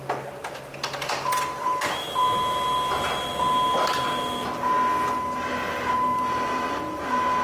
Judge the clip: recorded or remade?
recorded